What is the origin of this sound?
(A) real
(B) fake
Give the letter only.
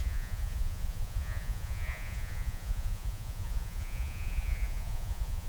B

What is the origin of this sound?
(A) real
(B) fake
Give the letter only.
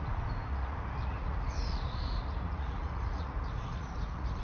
B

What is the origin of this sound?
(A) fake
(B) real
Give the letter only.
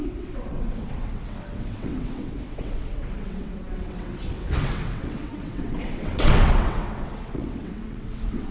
A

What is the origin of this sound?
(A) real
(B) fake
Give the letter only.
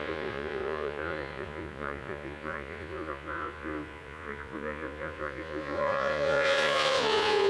B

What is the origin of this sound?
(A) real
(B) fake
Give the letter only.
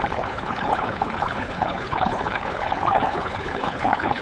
B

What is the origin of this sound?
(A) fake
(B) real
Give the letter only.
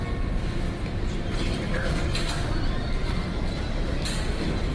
B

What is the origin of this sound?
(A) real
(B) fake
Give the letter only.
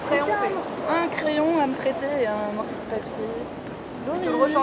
A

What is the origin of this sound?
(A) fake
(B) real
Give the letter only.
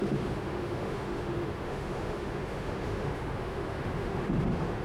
A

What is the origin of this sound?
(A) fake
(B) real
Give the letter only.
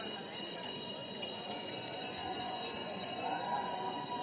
A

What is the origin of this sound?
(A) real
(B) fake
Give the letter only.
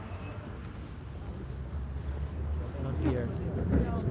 A